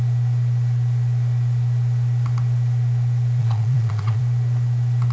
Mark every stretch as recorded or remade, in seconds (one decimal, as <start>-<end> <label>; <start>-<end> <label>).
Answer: 0.0-3.4 recorded; 3.4-4.2 remade; 4.2-5.1 recorded